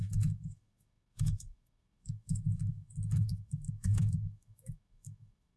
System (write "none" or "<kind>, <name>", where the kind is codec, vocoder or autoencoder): autoencoder, DAC-VAE